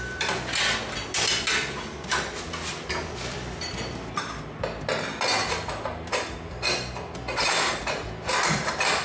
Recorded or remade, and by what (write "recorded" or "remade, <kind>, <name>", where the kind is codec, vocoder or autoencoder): recorded